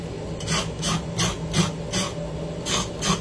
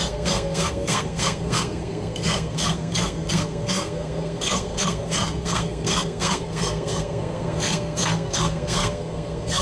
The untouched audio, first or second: first